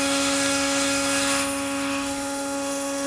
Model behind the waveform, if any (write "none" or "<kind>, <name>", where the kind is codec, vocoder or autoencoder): autoencoder, DAC-VAE